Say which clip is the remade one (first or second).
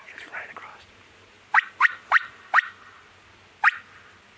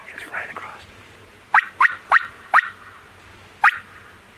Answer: second